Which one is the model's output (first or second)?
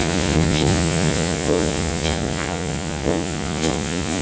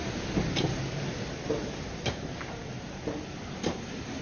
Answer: first